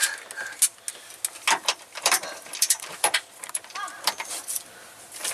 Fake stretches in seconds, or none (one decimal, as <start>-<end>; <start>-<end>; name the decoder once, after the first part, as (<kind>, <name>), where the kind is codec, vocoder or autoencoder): 1.9-5.3 (vocoder, BigVGAN v2)